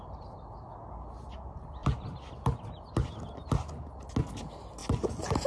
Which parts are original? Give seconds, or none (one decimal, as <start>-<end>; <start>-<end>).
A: 0.0-5.5